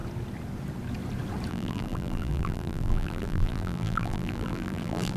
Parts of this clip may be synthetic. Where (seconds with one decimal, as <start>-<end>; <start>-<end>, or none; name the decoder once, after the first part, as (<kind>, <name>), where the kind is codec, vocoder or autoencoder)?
1.5-5.2 (vocoder, BigVGAN v2)